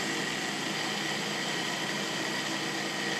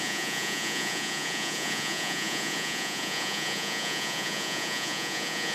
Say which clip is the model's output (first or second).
second